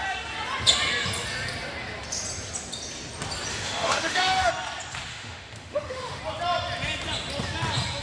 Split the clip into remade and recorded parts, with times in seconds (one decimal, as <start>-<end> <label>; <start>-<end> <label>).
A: 0.0-3.5 recorded; 3.5-4.5 remade; 4.5-5.1 recorded; 5.1-6.2 remade; 6.2-8.0 recorded

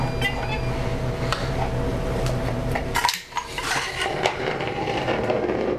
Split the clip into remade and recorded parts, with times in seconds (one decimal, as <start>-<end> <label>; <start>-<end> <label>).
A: 0.0-0.9 recorded; 0.9-1.5 remade; 1.5-1.9 recorded; 1.9-5.8 remade